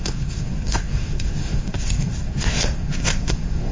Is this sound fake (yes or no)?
yes